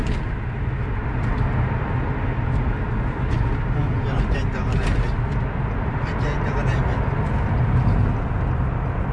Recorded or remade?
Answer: recorded